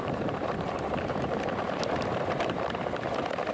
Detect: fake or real fake